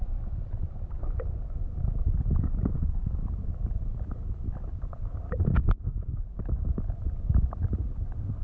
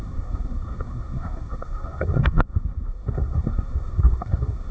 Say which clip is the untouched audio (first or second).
first